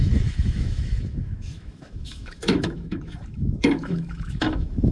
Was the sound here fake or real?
fake